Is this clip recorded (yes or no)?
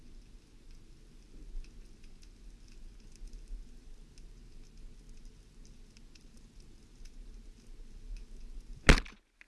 yes